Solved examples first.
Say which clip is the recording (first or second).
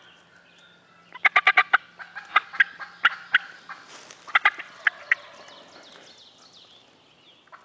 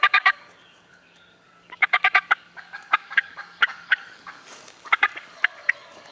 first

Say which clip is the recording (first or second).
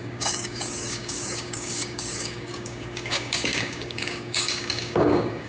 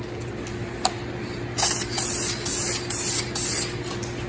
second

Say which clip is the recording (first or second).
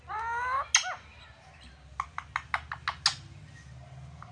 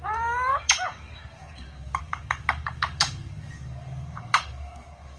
first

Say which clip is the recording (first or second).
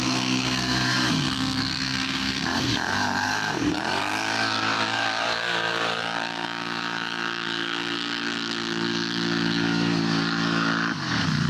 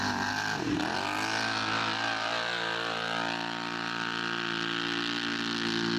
second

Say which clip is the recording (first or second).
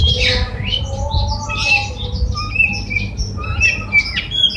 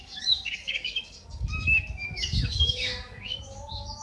first